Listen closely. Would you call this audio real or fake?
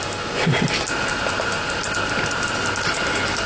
real